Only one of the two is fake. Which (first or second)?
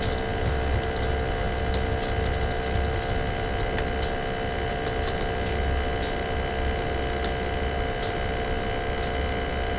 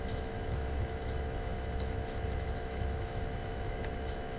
second